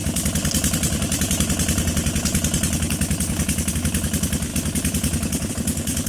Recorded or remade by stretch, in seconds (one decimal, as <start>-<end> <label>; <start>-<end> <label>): 0.0-4.5 remade; 4.5-5.5 recorded; 5.5-6.1 remade